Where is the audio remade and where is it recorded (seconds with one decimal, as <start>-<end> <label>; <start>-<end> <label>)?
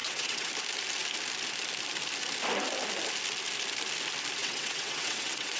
0.0-0.5 remade; 0.5-4.4 recorded; 4.4-5.6 remade